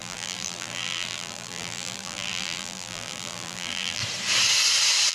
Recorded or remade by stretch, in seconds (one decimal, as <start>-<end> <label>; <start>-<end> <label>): 0.0-4.0 remade; 4.0-5.1 recorded